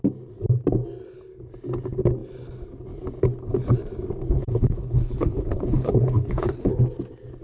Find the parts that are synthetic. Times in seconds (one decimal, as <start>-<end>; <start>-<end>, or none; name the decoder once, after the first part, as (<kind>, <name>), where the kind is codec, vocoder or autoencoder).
4.4-6.7 (codec, HILCodec)